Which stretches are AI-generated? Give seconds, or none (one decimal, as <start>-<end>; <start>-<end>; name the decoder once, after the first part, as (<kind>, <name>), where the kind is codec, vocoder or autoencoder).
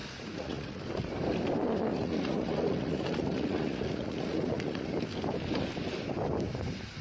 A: 0.0-0.8 (vocoder, Vocos); 1.9-4.9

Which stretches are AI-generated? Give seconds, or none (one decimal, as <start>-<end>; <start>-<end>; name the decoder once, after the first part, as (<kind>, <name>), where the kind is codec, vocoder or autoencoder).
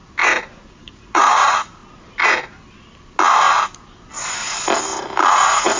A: 0.7-1.8 (vocoder, Vocos); 5.3-5.8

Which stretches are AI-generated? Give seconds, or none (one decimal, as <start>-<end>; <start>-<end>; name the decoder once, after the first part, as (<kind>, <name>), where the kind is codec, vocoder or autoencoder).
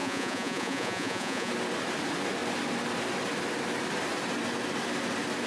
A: 0.0-1.5 (vocoder, Vocos)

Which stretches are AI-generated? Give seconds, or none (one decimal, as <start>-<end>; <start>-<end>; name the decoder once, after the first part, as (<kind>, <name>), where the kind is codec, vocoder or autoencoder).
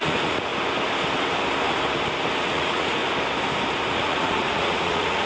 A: 0.0-0.5 (vocoder, Vocos); 2.4-3.0; 3.9-5.3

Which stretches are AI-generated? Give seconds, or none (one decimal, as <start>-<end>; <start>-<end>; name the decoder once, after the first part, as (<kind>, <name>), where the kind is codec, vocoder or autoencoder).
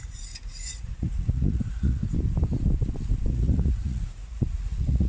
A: 0.0-2.0 (vocoder, Vocos); 3.3-5.1